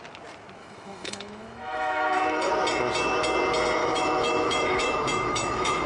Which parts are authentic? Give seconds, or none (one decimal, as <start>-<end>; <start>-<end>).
0.0-0.6; 2.5-3.8